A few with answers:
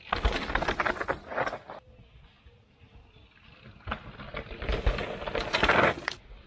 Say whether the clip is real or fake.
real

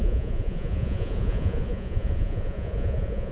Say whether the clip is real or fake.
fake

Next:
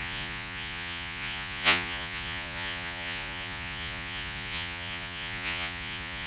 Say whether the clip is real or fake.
fake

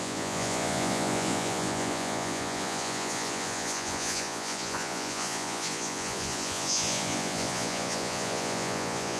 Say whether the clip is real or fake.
fake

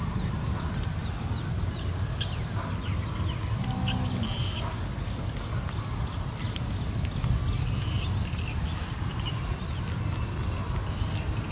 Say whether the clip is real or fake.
real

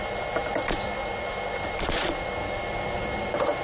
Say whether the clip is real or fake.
real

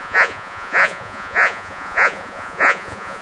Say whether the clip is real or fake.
fake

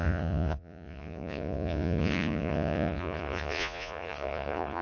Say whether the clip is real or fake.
fake